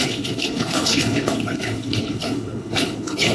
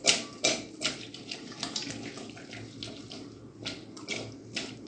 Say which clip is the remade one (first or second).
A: first